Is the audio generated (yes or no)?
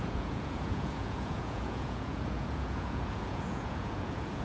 yes